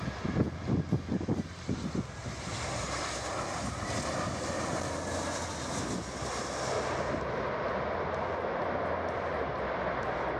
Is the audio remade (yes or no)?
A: no